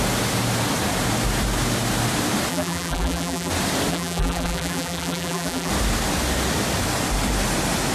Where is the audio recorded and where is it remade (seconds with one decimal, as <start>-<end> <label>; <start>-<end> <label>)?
0.0-2.5 recorded; 2.5-3.5 remade; 3.5-3.9 recorded; 3.9-5.7 remade; 5.7-7.9 recorded